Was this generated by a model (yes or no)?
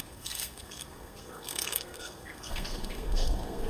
yes